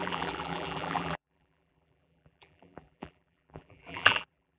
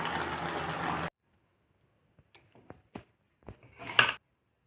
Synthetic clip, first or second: first